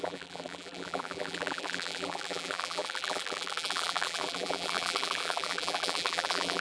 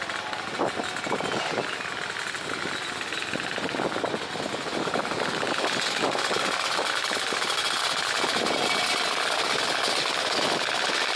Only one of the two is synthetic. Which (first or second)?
first